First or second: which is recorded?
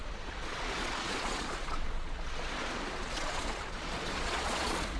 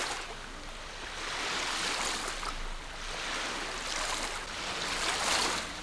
second